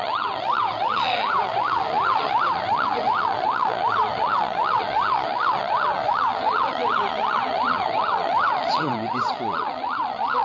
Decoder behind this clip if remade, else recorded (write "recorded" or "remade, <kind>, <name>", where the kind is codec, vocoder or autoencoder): remade, vocoder, WaveNeXt